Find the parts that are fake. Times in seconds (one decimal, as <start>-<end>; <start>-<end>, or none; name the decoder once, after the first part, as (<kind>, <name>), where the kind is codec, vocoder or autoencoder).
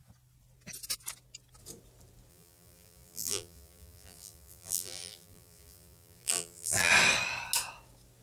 2.3-6.9 (vocoder, BigVGAN v2)